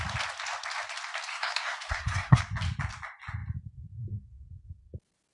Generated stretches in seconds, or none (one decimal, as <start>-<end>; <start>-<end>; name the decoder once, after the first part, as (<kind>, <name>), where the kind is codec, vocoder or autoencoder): 1.3-2.4 (codec, SNAC)